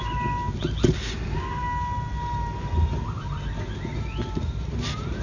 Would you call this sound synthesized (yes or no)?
no